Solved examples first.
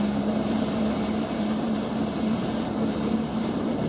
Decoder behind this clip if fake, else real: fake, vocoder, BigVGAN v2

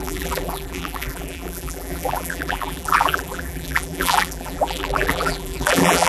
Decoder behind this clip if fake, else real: fake, vocoder, BigVGAN v2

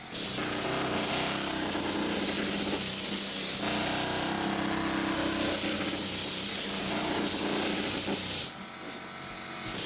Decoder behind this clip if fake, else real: real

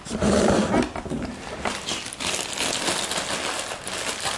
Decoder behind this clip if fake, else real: real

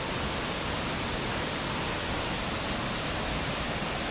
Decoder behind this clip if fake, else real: real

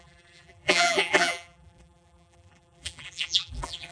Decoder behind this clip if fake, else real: fake, vocoder, BigVGAN v2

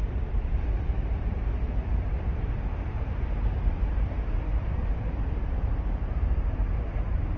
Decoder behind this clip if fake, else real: fake, vocoder, BigVGAN v2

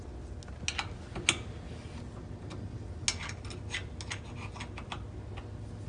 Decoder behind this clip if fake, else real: real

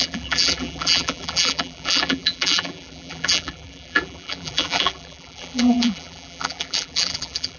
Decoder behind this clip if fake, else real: fake, vocoder, BigVGAN v2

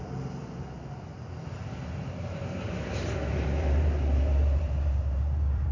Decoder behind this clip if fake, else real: fake, vocoder, BigVGAN v2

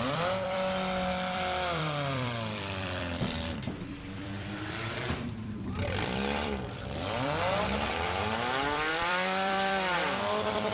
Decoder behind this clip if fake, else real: fake, vocoder, BigVGAN v2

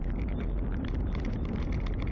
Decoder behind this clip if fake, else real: fake, vocoder, BigVGAN v2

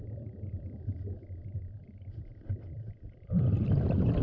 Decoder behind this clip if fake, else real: fake, vocoder, BigVGAN v2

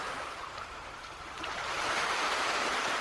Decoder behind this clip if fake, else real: fake, vocoder, BigVGAN v2